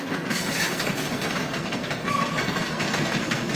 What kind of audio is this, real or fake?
fake